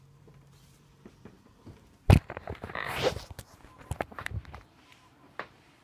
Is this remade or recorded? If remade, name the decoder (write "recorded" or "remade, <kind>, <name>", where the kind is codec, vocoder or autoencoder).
remade, vocoder, BigVGAN v2